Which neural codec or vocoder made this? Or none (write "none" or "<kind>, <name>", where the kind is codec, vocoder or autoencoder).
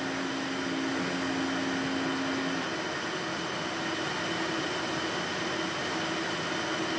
none